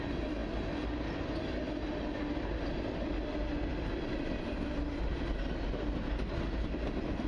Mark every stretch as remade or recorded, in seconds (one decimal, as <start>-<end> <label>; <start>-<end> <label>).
0.0-7.3 recorded